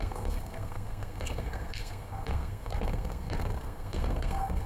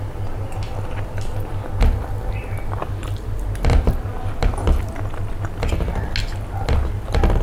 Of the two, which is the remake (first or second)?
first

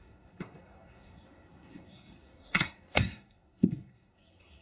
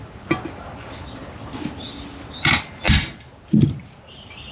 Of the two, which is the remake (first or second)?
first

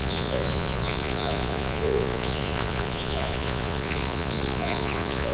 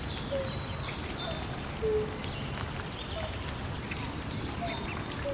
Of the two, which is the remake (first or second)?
first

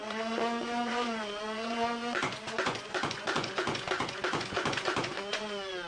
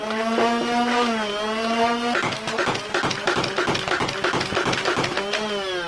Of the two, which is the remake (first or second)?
first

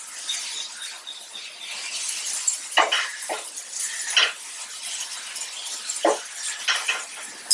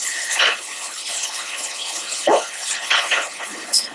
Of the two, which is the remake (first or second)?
second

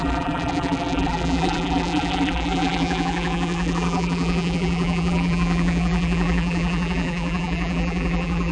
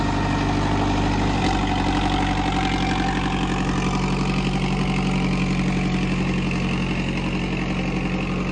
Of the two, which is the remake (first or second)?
first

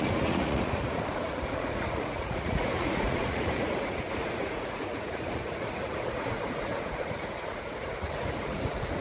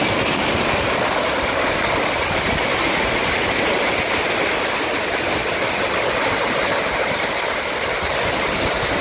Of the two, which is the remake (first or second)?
first